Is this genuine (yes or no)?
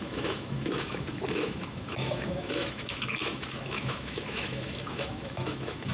no